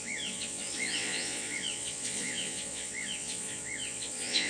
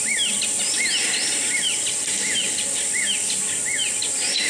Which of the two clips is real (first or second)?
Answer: second